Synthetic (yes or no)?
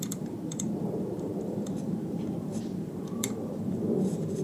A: yes